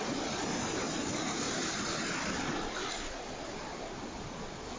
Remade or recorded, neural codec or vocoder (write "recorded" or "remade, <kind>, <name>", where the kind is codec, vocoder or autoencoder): recorded